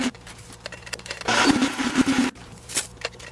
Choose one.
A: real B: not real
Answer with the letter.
B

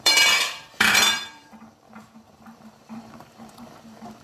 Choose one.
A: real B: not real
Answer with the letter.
B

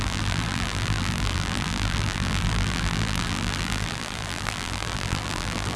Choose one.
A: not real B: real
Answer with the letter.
A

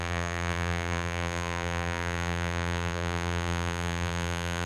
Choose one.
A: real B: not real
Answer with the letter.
B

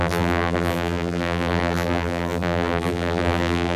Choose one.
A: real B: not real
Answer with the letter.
B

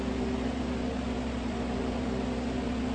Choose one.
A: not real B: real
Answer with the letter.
B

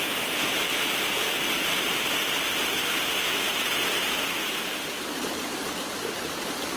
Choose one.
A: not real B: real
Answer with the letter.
B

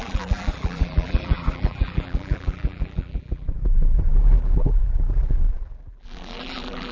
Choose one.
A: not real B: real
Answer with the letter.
A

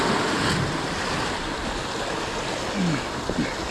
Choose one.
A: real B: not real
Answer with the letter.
A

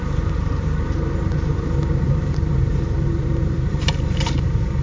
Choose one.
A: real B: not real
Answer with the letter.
B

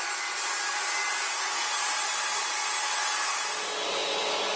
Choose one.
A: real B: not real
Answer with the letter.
A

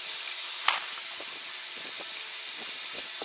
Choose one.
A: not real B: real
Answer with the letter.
B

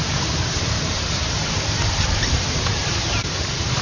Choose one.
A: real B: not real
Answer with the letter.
B